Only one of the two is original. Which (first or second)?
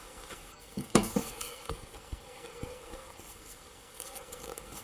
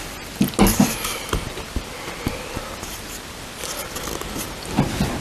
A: second